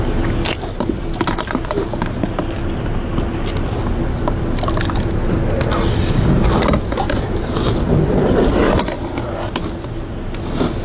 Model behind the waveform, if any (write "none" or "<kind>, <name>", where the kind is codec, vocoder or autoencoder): none